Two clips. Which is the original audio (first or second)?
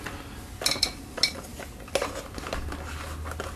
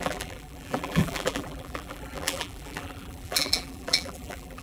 first